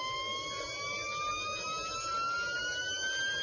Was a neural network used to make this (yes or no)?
no